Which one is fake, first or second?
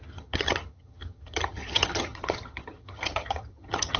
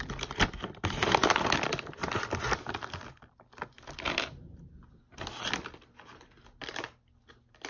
first